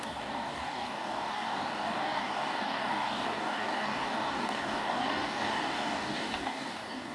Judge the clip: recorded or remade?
remade